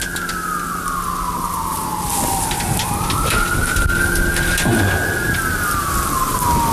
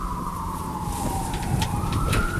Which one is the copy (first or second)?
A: second